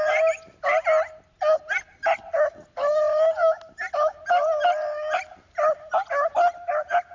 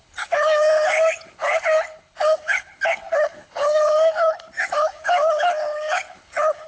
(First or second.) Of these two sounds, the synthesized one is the second